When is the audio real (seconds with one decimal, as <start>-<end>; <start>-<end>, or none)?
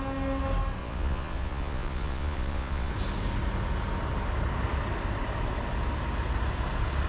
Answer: 0.0-0.8; 2.9-7.1